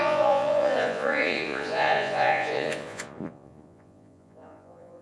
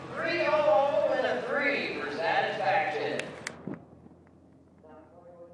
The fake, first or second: first